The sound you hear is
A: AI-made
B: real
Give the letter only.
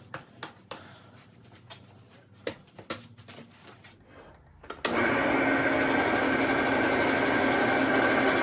B